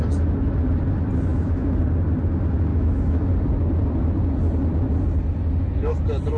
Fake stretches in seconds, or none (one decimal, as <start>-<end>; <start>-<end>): 1.3-1.8; 2.7-3.3